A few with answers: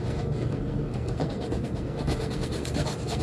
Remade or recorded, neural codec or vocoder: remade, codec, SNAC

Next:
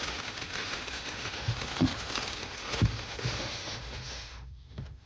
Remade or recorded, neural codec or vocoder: remade, autoencoder, DAC-VAE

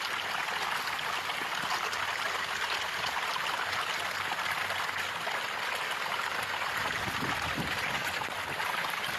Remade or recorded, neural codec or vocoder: recorded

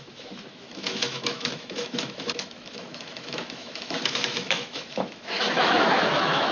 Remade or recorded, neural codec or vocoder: remade, autoencoder, DAC-VAE